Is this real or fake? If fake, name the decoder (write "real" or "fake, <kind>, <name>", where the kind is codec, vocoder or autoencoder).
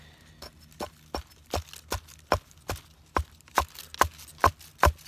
real